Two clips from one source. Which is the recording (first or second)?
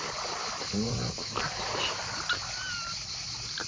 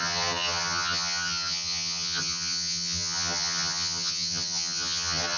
first